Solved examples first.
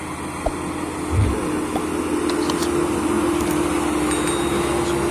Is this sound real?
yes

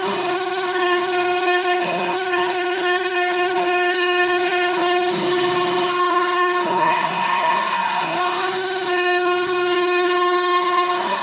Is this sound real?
no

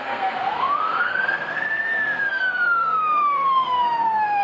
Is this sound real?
no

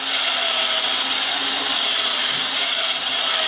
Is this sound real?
yes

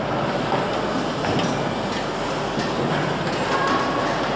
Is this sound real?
yes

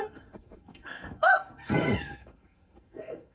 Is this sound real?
no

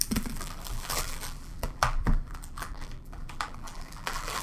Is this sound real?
no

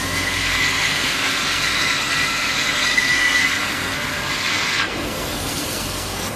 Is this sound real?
no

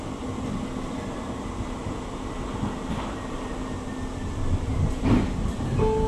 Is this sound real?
yes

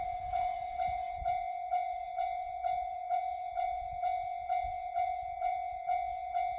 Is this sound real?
no